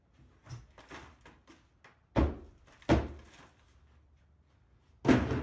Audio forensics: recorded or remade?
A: recorded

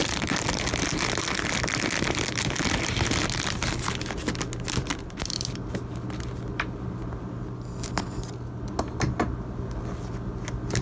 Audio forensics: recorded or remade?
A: recorded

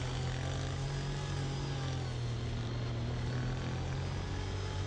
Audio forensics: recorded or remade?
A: recorded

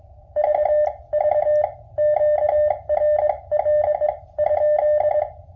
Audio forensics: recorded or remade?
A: recorded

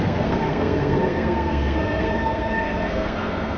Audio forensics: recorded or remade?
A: remade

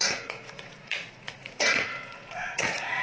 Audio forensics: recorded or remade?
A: remade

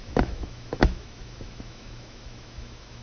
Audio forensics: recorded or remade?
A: remade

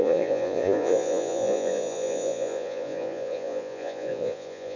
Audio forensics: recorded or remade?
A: remade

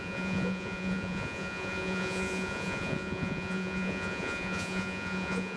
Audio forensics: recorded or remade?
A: remade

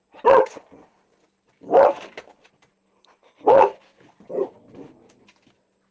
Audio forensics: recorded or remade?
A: recorded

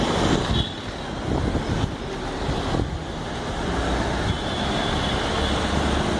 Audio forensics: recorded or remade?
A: recorded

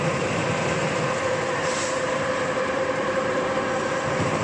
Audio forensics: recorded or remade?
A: remade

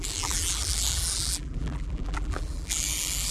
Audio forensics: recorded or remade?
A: remade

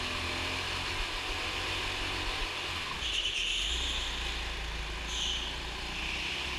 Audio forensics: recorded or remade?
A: recorded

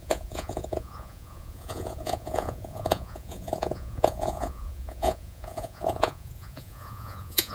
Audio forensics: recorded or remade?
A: remade